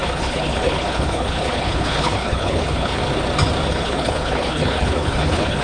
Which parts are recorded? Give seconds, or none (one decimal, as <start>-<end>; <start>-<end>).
3.0-3.7